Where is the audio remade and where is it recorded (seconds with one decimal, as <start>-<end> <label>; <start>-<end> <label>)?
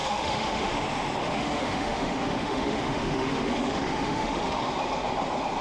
0.0-0.7 remade; 0.7-1.2 recorded; 1.2-4.6 remade; 4.6-5.6 recorded